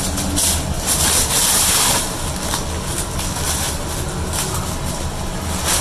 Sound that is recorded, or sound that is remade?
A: recorded